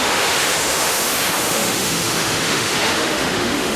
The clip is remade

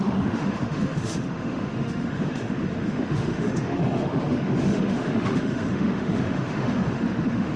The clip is remade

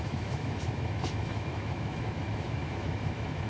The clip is remade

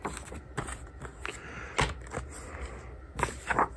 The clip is recorded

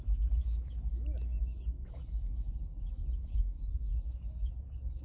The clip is remade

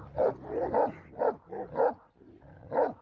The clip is recorded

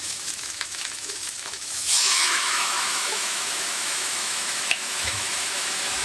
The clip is remade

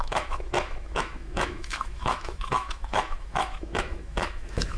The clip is remade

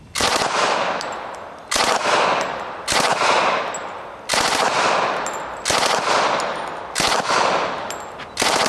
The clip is recorded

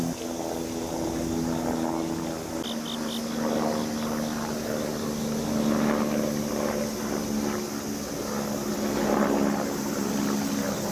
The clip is recorded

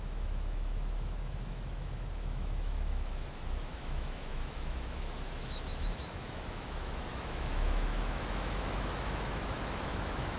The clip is remade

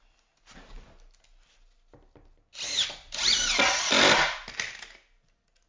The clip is recorded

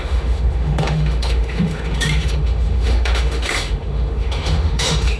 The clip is remade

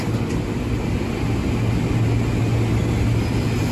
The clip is recorded